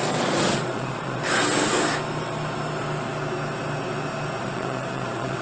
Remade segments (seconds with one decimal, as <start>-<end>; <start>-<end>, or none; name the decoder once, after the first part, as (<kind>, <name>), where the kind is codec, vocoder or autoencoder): 0.0-1.2 (vocoder, Vocos); 4.4-5.4